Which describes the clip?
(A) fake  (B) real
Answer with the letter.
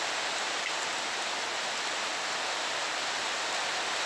B